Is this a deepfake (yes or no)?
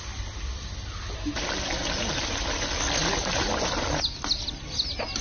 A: no